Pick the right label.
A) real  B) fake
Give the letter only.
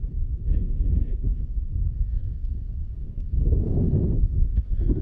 B